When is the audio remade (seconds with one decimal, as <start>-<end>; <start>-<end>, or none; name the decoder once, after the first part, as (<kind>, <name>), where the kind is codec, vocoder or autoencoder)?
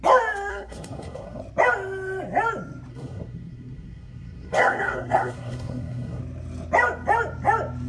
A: 0.5-1.4 (codec, SNAC); 2.9-6.2